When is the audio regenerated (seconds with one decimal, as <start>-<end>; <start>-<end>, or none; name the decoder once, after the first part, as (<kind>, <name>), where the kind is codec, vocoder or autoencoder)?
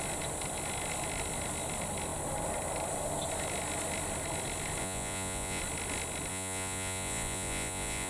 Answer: 4.8-5.6 (vocoder, Vocos); 6.3-8.1